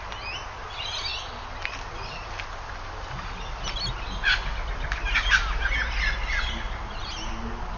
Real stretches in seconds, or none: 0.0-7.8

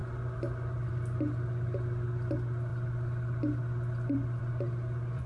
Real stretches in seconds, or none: 0.0-5.3